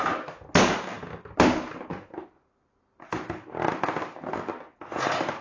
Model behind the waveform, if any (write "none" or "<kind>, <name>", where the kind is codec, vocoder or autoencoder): none